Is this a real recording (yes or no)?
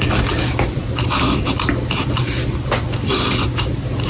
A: yes